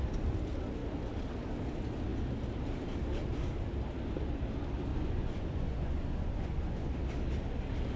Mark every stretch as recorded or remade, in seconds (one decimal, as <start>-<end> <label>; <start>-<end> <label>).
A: 0.0-4.9 recorded; 4.9-6.9 remade; 6.9-8.0 recorded

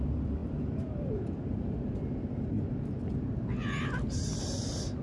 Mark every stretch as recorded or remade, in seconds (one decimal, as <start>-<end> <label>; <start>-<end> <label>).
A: 0.0-5.0 recorded

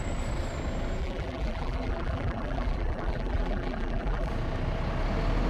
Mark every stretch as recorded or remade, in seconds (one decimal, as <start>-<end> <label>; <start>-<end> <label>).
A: 0.0-1.0 recorded; 1.0-4.3 remade; 4.3-5.5 recorded

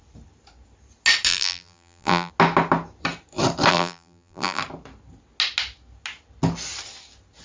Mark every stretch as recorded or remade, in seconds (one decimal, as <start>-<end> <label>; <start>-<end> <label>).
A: 0.0-1.3 recorded; 1.3-2.3 remade; 2.3-3.7 recorded; 3.7-4.6 remade; 4.6-7.4 recorded

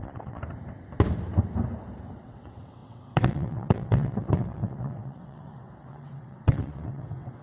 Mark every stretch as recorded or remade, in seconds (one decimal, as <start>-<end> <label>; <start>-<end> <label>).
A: 0.0-0.4 remade; 0.4-2.2 recorded; 2.2-7.4 remade

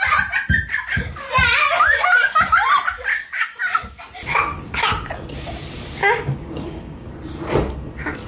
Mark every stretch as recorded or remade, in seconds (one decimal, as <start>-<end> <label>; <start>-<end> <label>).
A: 0.0-3.1 recorded; 3.1-3.6 remade; 3.6-6.0 recorded; 6.0-7.1 remade; 7.1-8.3 recorded